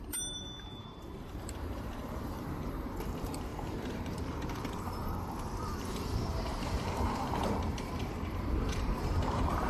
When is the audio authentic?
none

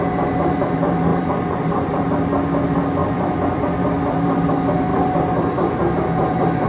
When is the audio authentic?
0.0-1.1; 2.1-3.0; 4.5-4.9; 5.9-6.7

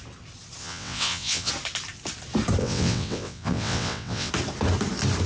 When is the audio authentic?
0.0-0.6; 1.5-2.6; 4.3-5.3

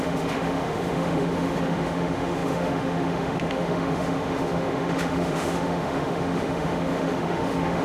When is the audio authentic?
none

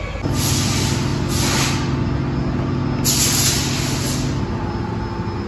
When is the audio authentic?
0.0-5.5